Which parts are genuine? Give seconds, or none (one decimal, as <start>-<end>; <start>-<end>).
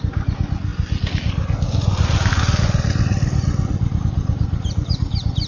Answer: 0.0-5.5